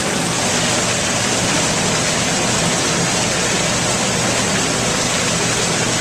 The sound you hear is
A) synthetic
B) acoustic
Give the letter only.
B